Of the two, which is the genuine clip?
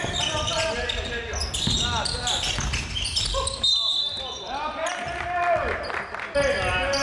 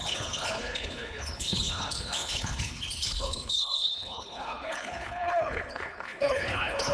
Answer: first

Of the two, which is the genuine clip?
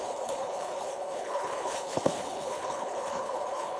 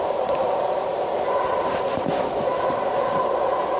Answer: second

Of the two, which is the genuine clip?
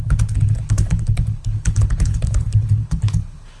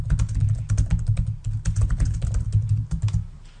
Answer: second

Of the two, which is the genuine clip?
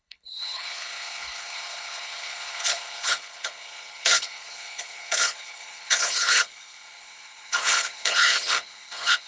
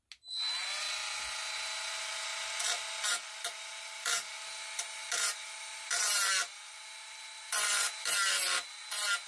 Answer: second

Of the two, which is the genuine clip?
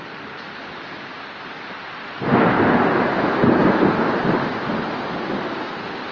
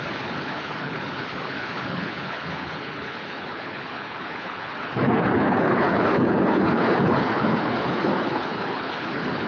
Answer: first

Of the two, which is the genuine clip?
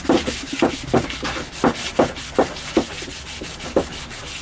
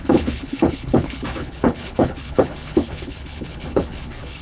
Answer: first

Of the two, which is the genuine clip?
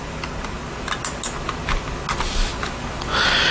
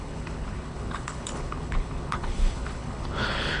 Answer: first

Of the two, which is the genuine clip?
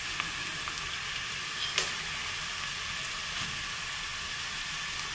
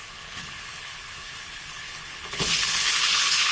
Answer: first